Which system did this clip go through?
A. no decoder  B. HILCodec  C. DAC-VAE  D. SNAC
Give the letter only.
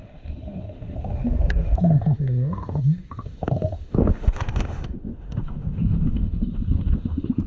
C